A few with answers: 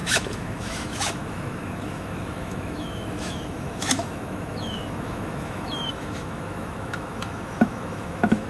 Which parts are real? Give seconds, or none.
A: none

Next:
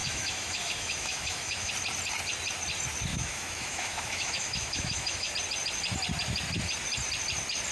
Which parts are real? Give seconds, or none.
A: 1.7-3.1; 5.3-7.7

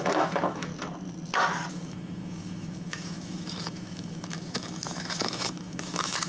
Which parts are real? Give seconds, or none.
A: 0.7-1.7

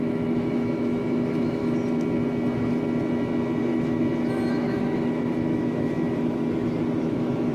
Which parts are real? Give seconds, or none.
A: 1.6-3.6; 4.0-4.8; 6.4-7.0